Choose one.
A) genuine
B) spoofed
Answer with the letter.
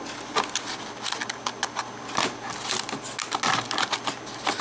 A